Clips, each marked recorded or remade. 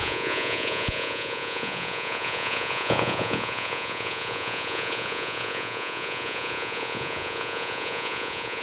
remade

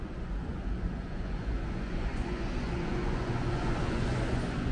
remade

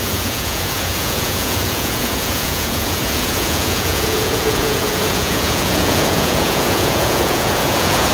remade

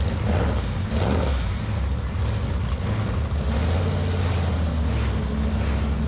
recorded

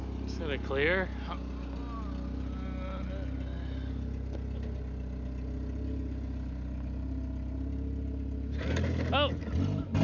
recorded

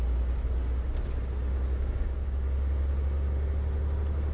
recorded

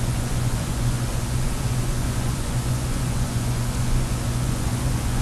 remade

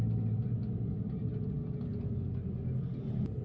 recorded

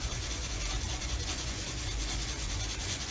remade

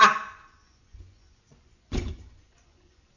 remade